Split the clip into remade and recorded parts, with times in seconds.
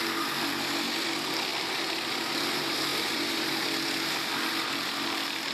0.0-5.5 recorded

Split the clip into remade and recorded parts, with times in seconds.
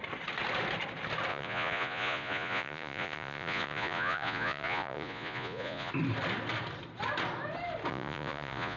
0.0-1.3 recorded; 1.3-5.9 remade; 5.9-7.9 recorded; 7.9-8.8 remade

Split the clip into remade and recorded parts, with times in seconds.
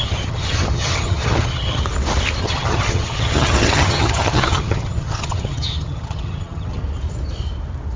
0.0-1.8 remade; 1.8-2.4 recorded; 2.4-6.8 remade; 6.8-8.0 recorded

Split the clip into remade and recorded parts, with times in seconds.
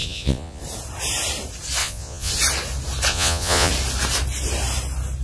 0.0-0.6 remade; 0.6-1.8 recorded; 1.8-2.3 remade; 2.3-3.1 recorded; 3.1-3.7 remade; 3.7-5.2 recorded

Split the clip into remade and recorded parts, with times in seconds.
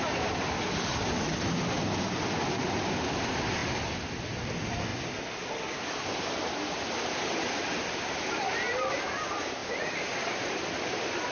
0.0-11.3 recorded